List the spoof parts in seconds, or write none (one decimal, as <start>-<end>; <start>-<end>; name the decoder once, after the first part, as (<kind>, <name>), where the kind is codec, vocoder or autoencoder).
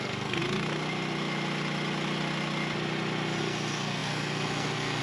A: 0.0-0.4 (codec, SNAC); 3.4-5.0